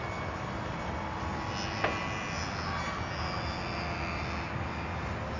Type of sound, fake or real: real